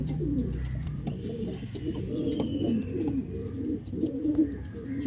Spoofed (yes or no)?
yes